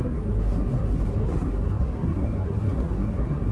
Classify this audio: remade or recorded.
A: remade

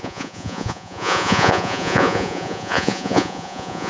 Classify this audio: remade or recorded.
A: remade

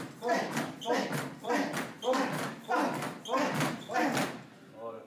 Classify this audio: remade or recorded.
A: recorded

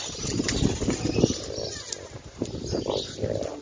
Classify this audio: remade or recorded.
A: recorded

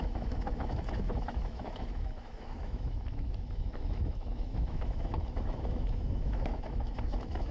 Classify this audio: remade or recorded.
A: remade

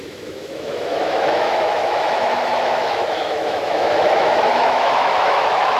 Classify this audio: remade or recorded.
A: remade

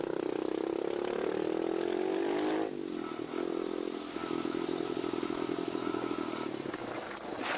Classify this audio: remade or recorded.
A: recorded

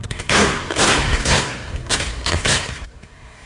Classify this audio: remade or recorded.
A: remade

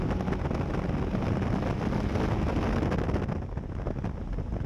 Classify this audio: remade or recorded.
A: recorded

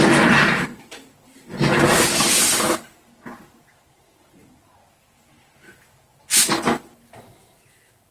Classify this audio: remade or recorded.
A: recorded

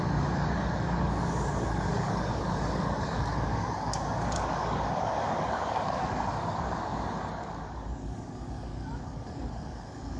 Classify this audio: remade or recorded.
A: remade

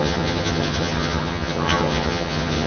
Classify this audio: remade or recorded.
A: remade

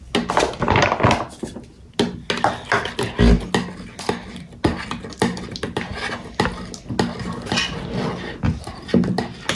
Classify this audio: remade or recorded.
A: recorded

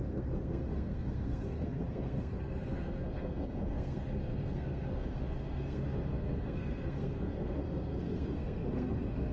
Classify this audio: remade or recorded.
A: remade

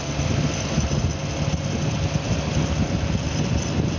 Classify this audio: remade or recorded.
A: recorded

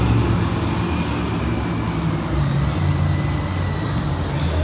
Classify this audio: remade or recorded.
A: recorded